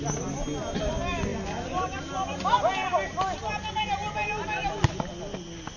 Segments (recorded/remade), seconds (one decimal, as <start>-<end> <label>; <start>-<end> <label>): 0.0-5.8 recorded